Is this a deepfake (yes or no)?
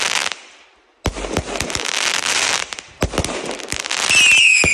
no